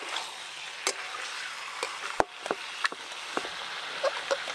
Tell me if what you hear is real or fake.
real